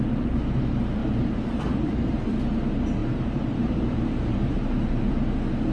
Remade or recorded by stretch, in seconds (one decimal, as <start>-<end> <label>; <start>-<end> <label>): 0.0-1.0 recorded; 1.0-2.4 remade; 2.4-3.0 recorded; 3.0-5.1 remade; 5.1-5.7 recorded